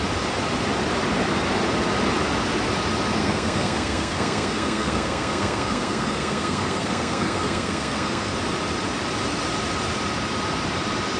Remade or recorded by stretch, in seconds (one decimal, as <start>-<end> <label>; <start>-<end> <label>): 0.0-3.2 recorded; 3.2-8.3 remade; 8.3-11.2 recorded